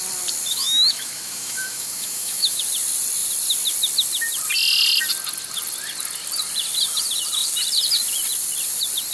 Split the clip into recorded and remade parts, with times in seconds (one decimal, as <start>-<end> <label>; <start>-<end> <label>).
0.0-0.5 recorded; 0.5-2.6 remade; 2.6-9.1 recorded